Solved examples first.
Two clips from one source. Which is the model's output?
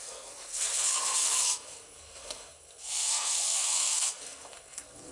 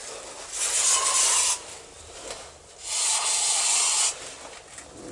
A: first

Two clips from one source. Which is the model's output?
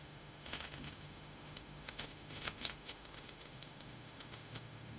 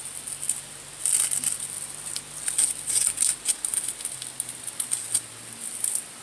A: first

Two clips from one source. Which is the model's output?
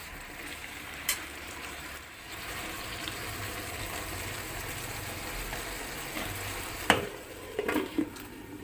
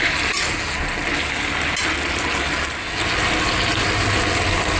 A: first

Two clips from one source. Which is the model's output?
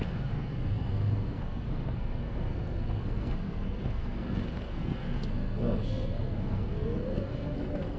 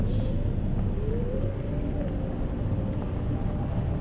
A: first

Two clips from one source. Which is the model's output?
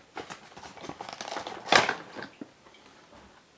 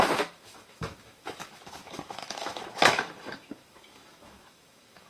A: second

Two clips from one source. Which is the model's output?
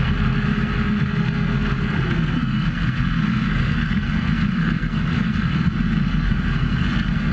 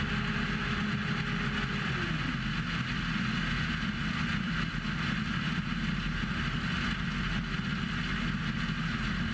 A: first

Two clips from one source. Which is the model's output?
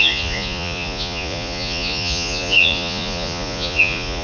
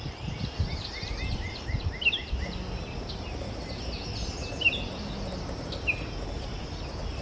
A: first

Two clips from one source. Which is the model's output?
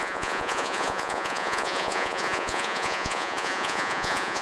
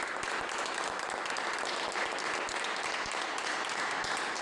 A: first